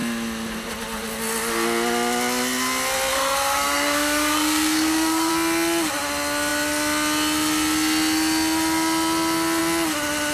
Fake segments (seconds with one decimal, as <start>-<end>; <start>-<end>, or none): 3.1-5.3